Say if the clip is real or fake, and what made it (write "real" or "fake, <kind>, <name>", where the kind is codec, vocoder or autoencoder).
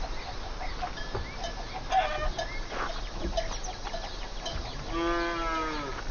real